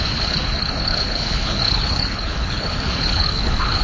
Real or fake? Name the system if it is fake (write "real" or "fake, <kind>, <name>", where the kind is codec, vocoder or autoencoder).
fake, codec, HILCodec